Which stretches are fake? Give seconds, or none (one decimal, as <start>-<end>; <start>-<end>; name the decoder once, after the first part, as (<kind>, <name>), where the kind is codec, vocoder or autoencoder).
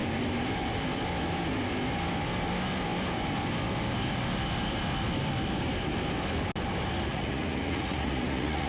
7.1-8.7 (vocoder, Vocos)